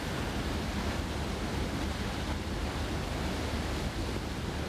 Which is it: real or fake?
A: real